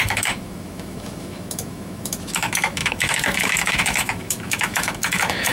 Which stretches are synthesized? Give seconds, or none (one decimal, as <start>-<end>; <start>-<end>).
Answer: 0.0-5.5